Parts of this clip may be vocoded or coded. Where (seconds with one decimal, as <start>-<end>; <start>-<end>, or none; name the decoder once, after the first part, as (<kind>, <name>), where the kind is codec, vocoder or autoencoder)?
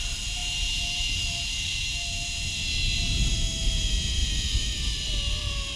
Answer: none